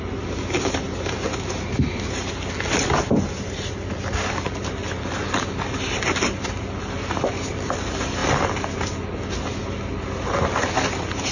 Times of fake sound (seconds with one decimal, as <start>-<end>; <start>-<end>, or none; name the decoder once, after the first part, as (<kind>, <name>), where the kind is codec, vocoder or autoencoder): none